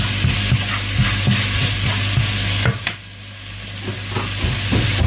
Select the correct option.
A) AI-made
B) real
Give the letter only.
B